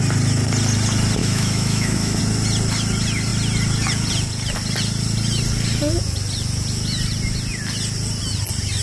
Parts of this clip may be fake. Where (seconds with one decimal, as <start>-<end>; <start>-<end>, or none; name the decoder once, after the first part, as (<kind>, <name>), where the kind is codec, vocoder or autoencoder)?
1.2-2.2 (autoencoder, DAC-VAE)